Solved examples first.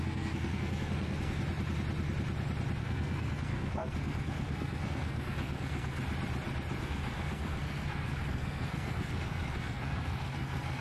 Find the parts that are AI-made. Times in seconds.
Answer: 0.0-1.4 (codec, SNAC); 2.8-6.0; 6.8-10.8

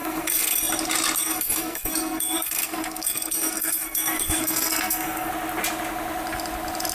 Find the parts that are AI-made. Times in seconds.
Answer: 0.0-0.6 (codec, SNAC); 1.2-5.3

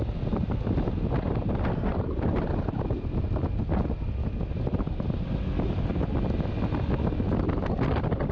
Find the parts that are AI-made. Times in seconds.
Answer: none

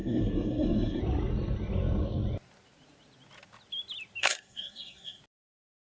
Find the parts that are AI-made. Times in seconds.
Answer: 0.0-1.0 (codec, SNAC); 4.2-5.2